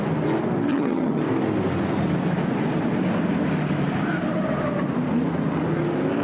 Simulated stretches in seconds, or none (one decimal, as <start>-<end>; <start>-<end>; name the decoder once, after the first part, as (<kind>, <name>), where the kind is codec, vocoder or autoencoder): 0.7-1.2 (vocoder, HiFi-GAN)